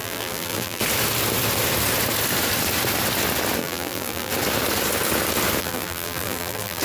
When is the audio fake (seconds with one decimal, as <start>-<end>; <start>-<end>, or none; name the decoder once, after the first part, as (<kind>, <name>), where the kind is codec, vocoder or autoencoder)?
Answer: 0.0-0.8 (vocoder, BigVGAN v2); 3.6-4.3; 5.6-6.8